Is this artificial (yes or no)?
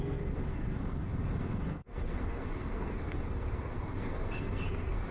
yes